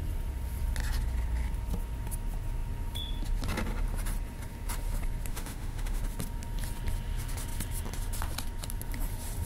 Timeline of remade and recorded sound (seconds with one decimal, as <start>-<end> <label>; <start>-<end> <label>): 0.0-5.3 recorded; 5.3-6.0 remade; 6.0-9.5 recorded